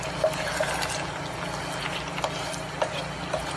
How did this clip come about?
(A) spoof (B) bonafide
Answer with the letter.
B